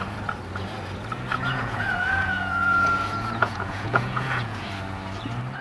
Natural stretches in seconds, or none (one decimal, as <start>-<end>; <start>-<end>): 0.0-1.3; 4.7-5.6